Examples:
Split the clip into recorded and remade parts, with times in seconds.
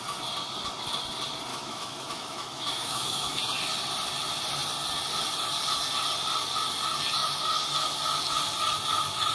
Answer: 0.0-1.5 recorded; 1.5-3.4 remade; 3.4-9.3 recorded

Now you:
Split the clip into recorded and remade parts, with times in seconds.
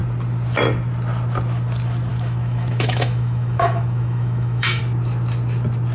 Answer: 0.0-2.1 recorded; 2.1-4.8 remade; 4.8-5.9 recorded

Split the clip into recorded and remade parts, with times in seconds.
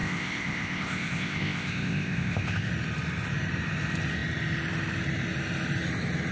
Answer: 0.0-2.7 remade; 2.7-6.3 recorded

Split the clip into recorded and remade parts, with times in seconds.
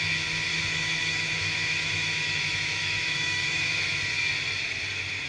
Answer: 0.0-0.5 recorded; 0.5-3.7 remade; 3.7-5.3 recorded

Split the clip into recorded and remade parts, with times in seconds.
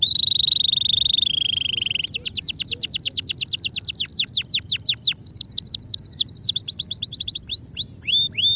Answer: 0.0-8.6 recorded